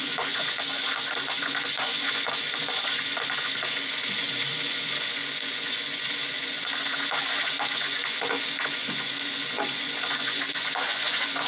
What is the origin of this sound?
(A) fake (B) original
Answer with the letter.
A